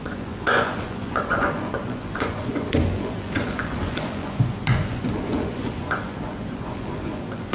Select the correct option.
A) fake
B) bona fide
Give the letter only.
A